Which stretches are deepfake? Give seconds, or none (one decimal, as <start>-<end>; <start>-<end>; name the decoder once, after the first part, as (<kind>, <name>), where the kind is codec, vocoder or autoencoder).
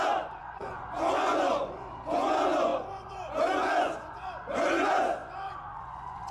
0.0-6.3 (vocoder, Vocos)